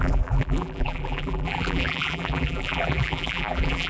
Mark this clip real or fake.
fake